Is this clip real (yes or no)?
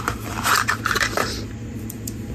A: no